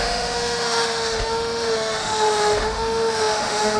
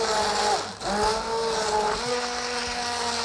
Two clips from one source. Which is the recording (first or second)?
second